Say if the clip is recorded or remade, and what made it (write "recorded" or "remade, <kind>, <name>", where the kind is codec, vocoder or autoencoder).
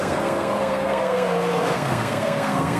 remade, codec, SNAC